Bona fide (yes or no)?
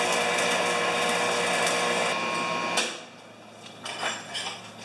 yes